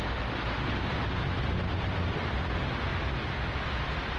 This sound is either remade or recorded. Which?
recorded